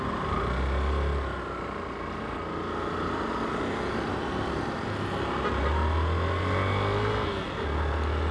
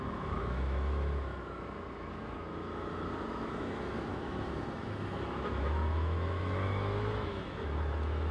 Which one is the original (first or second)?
first